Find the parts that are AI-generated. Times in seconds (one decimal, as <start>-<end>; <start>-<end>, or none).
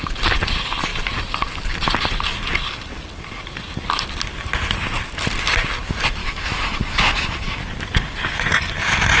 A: 6.2-7.6